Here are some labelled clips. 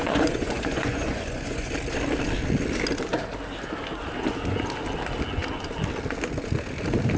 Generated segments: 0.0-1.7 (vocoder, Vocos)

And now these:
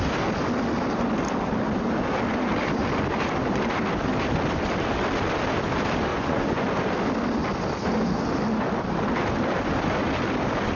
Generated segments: 6.1-6.7 (vocoder, Vocos)